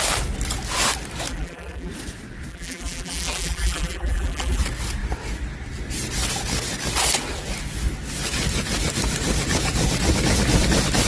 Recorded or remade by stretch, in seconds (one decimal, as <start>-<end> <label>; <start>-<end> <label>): 0.0-1.3 recorded; 1.3-1.9 remade; 1.9-2.5 recorded; 2.5-4.6 remade; 4.6-11.1 recorded